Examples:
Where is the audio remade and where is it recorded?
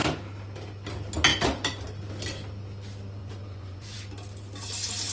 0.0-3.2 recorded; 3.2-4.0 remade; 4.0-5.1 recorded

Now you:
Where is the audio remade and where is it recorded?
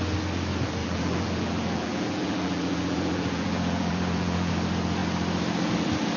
0.0-0.8 recorded; 0.8-4.5 remade; 4.5-6.2 recorded